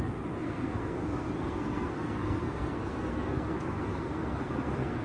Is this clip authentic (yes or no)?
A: no